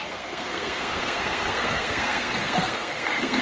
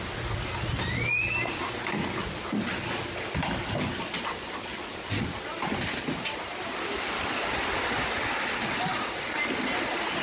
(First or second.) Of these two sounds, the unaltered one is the second